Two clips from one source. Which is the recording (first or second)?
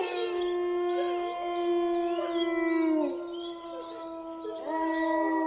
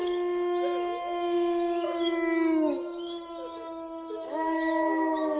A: first